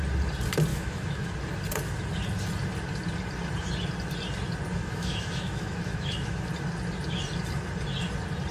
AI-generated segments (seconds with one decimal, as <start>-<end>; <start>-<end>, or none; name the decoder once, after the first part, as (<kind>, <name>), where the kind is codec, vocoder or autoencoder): 0.7-1.3 (autoencoder, DAC-VAE); 4.7-6.5